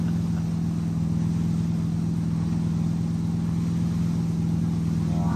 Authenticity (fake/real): real